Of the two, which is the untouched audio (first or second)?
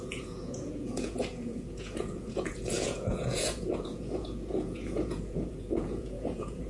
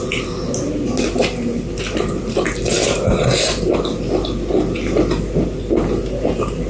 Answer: second